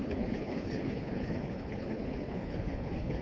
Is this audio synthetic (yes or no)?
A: yes